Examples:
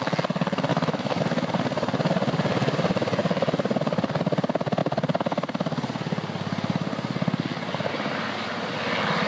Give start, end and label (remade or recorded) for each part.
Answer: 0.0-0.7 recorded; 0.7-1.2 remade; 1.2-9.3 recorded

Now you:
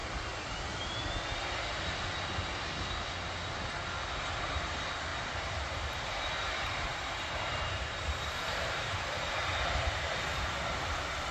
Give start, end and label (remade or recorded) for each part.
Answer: 0.0-0.5 remade; 0.5-5.1 recorded; 5.1-9.3 remade; 9.3-11.3 recorded

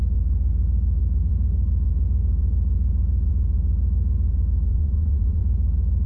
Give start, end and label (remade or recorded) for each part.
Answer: 0.0-4.7 recorded; 4.7-5.4 remade; 5.4-6.1 recorded

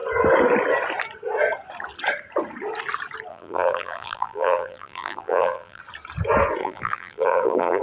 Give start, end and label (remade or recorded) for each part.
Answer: 0.0-3.3 recorded; 3.3-5.8 remade; 5.8-6.6 recorded; 6.6-7.8 remade

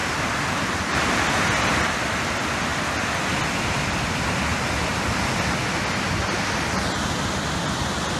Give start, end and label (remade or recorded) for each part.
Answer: 0.0-8.2 recorded

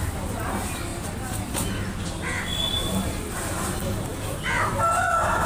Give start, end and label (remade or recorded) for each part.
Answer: 0.0-5.5 recorded

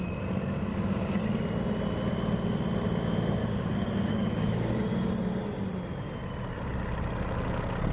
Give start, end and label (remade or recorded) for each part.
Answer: 0.0-0.7 recorded; 0.7-1.2 remade; 1.2-3.4 recorded; 3.4-5.1 remade; 5.1-7.9 recorded

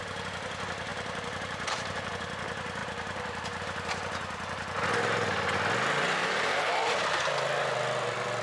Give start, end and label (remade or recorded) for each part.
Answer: 0.0-0.9 recorded; 0.9-2.1 remade; 2.1-2.8 recorded; 2.8-3.6 remade; 3.6-6.2 recorded; 6.2-6.7 remade; 6.7-8.4 recorded